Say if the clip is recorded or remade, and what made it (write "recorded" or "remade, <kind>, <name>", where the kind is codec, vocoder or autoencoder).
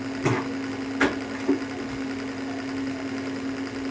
recorded